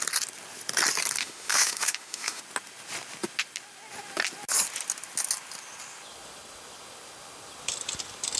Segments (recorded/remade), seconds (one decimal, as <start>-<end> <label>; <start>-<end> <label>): 0.0-1.2 recorded; 1.2-2.4 remade; 2.4-8.4 recorded